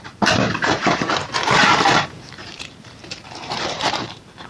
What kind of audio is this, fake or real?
fake